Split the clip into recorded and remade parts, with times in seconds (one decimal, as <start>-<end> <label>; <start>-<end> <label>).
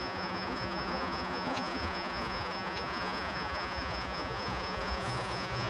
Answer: 0.0-5.7 remade